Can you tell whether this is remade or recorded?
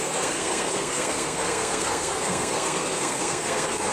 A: remade